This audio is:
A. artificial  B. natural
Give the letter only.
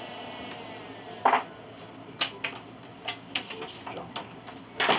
B